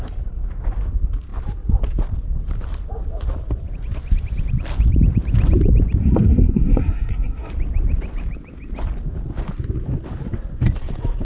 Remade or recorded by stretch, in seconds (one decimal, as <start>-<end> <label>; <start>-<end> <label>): 0.0-6.0 recorded; 6.0-7.5 remade; 7.5-11.2 recorded